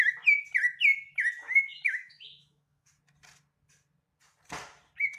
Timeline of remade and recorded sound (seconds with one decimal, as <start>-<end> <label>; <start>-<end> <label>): 0.0-1.4 recorded; 1.4-2.9 remade; 2.9-5.2 recorded